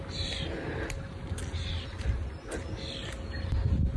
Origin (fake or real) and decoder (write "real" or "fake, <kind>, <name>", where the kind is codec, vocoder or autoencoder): real